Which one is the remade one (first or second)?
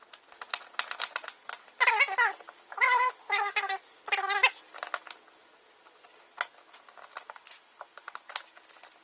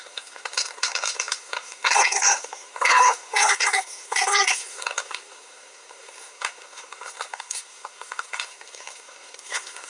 second